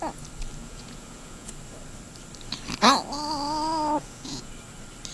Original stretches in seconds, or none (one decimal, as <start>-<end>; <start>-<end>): 0.0-0.6; 1.5-4.0; 4.5-5.1